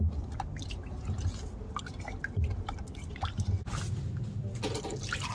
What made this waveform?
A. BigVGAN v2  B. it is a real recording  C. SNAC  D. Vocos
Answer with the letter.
B